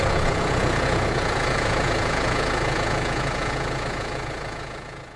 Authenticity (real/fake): fake